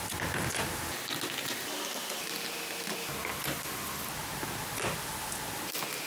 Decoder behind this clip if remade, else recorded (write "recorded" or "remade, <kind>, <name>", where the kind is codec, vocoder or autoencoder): recorded